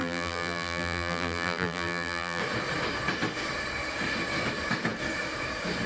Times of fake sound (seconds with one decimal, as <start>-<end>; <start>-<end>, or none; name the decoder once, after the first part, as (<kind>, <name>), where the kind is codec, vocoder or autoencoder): 0.0-2.4 (vocoder, BigVGAN v2)